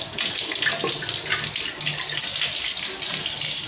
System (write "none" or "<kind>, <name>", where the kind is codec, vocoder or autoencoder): none